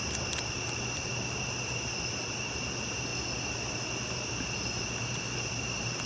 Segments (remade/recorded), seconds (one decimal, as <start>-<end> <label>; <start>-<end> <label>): 0.0-6.1 recorded